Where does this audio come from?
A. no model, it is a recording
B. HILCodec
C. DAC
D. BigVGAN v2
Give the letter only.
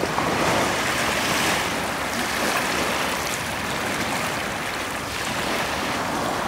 A